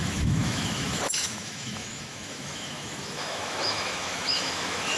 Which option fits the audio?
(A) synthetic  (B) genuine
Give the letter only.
A